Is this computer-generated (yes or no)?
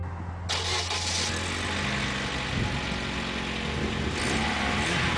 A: no